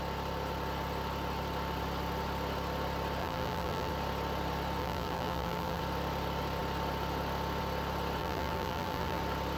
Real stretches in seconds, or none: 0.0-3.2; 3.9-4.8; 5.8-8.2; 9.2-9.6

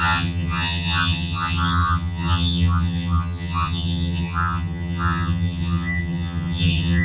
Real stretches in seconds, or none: none